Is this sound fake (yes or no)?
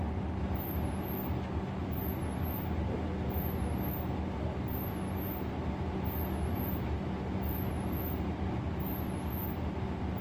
no